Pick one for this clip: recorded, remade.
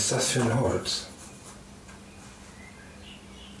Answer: recorded